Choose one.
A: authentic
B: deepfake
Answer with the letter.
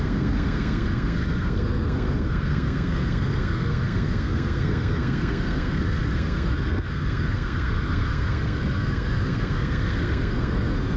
B